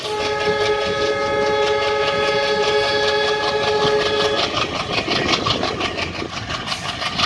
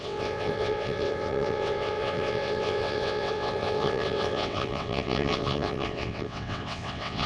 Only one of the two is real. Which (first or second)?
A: first